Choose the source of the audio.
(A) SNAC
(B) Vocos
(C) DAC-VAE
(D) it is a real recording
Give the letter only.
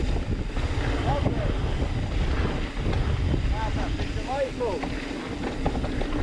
D